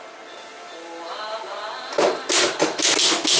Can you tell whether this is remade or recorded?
recorded